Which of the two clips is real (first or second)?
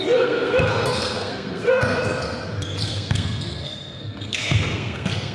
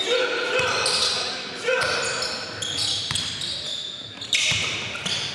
second